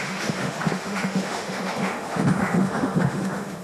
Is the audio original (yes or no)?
no